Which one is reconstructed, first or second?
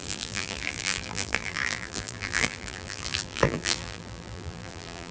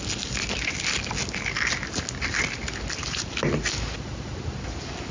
first